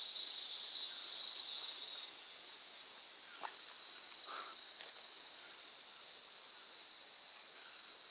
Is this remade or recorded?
recorded